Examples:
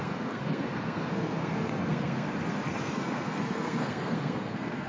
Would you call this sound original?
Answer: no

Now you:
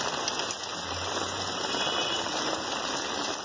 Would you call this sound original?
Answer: yes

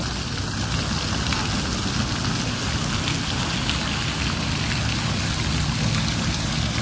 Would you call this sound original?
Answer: yes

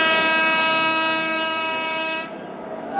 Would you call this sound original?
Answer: no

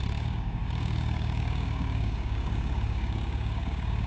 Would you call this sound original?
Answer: no